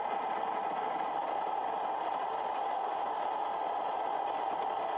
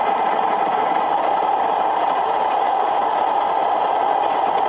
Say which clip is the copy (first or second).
second